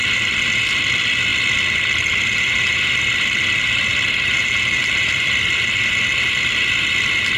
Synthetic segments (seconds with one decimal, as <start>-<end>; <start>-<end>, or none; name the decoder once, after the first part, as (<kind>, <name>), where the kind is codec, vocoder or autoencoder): none